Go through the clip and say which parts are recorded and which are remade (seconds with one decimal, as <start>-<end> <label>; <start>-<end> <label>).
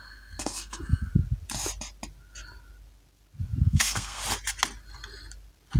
0.0-1.1 remade; 1.1-3.6 recorded; 3.6-4.2 remade; 4.2-5.8 recorded